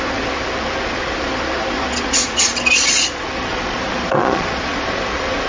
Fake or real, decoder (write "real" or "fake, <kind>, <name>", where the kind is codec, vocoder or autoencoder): fake, vocoder, Vocos